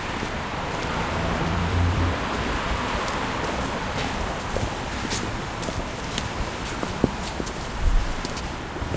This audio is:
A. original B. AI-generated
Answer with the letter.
B